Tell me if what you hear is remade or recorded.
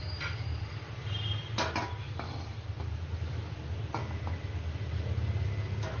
recorded